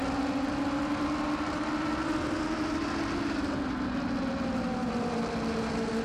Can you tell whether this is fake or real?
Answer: real